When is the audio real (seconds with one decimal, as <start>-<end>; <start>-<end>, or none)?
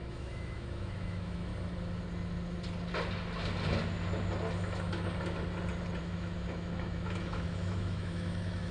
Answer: 1.5-6.0